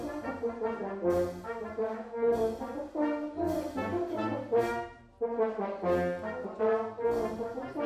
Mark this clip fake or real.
real